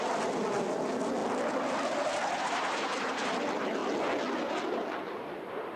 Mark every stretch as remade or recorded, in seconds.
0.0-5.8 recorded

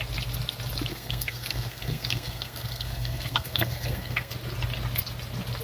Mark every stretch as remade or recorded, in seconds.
0.0-0.9 recorded; 0.9-4.3 remade; 4.3-5.6 recorded

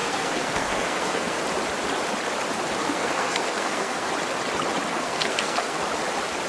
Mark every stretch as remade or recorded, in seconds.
0.0-1.4 remade; 1.4-2.8 recorded; 2.8-4.1 remade; 4.1-4.9 recorded; 4.9-5.8 remade; 5.8-6.5 recorded

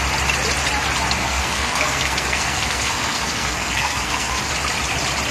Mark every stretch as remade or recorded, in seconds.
0.0-1.2 recorded; 1.2-4.4 remade; 4.4-5.3 recorded